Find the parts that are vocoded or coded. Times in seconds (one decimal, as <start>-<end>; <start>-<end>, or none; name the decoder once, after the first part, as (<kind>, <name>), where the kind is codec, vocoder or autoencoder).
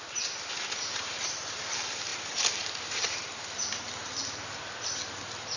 none